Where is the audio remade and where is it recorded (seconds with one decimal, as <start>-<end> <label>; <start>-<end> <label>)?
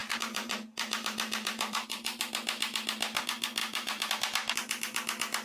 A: 0.0-2.2 remade; 2.2-3.6 recorded; 3.6-4.1 remade; 4.1-5.4 recorded